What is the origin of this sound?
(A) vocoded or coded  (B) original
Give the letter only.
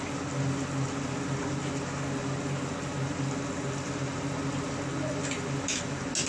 B